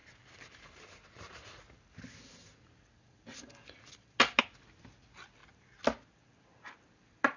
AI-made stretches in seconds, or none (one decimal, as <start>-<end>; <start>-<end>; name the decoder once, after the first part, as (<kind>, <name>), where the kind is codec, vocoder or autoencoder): none